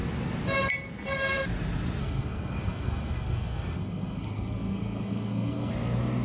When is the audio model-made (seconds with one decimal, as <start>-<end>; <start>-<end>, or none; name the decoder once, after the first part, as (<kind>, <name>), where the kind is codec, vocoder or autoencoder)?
2.0-5.7 (codec, SNAC)